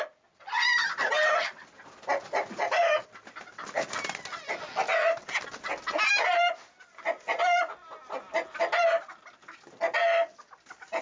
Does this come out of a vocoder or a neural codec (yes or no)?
no